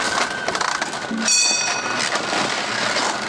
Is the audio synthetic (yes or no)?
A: no